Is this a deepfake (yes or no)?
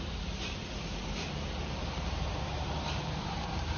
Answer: yes